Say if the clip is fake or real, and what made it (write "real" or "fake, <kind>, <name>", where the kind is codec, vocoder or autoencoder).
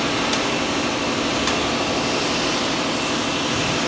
real